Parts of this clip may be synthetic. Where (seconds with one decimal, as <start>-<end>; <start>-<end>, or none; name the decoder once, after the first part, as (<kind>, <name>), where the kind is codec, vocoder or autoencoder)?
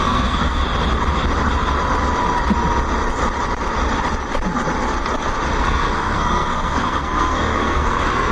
0.0-0.6 (codec, SNAC); 5.6-8.3